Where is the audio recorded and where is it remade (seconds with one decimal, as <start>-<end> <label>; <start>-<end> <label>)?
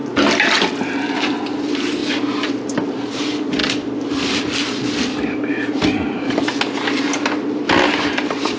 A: 0.0-8.6 recorded